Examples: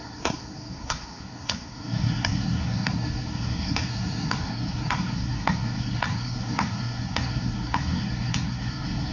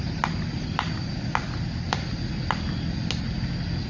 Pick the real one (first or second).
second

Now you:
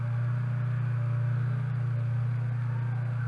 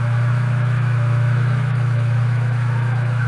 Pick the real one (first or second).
first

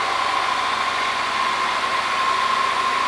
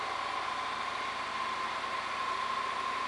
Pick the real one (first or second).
second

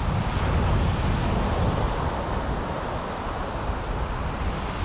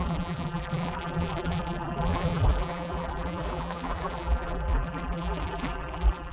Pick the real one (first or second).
first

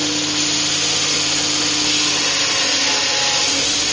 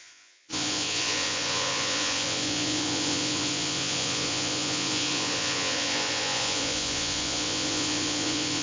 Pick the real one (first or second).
first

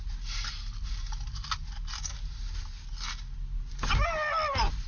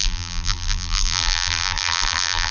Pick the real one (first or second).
first